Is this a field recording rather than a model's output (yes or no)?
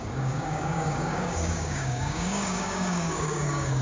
no